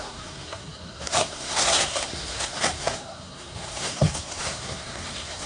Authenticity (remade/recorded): remade